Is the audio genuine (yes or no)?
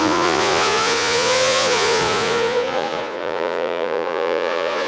no